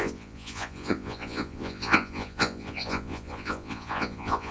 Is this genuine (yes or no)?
no